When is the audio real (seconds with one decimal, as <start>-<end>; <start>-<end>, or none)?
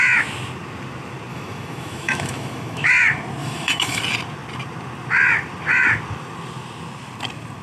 0.0-1.3; 2.9-3.4; 4.0-7.6